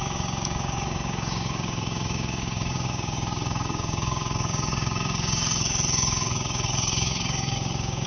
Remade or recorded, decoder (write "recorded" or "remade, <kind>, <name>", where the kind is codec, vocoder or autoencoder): remade, codec, DAC